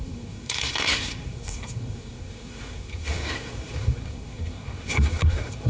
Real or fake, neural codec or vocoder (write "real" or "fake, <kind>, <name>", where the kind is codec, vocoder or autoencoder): fake, codec, SNAC